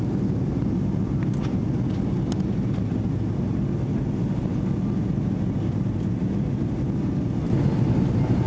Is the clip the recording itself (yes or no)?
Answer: yes